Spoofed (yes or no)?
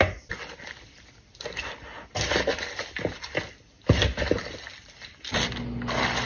no